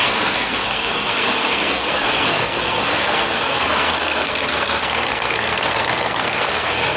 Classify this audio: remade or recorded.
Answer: remade